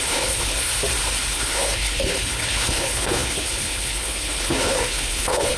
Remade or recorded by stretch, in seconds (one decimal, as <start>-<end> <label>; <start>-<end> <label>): 0.0-0.7 remade; 0.7-1.3 recorded; 1.3-5.6 remade